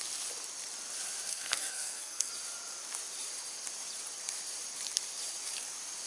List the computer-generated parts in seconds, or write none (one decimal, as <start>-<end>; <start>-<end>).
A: 1.3-2.3